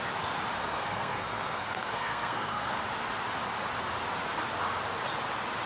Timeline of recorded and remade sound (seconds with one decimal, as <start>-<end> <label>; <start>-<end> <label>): 0.0-0.6 recorded; 0.6-2.8 remade; 2.8-5.7 recorded